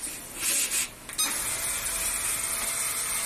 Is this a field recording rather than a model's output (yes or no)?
yes